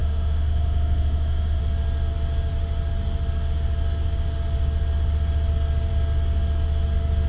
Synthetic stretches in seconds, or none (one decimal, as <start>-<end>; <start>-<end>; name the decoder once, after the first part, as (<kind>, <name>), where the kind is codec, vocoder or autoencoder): 0.0-1.6 (autoencoder, DAC-VAE)